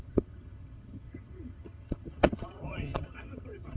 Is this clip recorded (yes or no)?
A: no